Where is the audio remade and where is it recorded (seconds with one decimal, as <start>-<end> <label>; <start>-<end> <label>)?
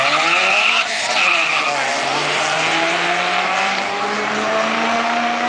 0.0-0.4 recorded; 0.4-1.3 remade; 1.3-2.1 recorded; 2.1-5.5 remade